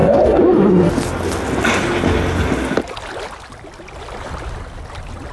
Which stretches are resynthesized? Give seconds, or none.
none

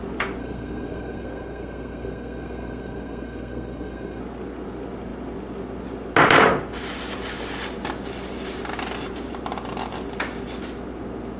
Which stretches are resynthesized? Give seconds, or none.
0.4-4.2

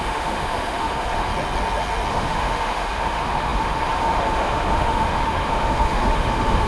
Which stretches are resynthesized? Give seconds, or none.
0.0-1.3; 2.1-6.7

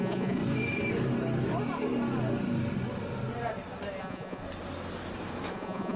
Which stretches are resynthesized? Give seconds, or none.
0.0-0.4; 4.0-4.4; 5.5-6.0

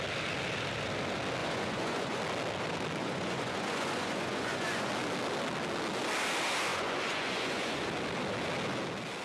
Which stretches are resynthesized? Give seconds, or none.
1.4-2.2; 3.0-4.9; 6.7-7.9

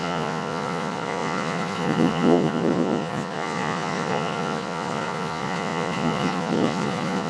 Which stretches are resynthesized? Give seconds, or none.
0.0-7.3